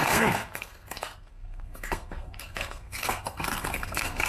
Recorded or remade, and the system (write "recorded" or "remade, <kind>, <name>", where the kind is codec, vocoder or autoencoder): remade, codec, SNAC